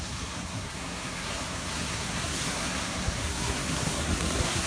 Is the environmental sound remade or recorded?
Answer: remade